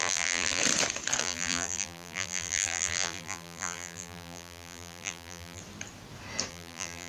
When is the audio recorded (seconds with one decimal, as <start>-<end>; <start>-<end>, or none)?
0.6-1.2; 5.6-6.5